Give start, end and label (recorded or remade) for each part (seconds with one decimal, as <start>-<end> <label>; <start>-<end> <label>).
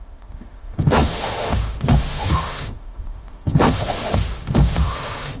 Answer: 0.0-5.4 remade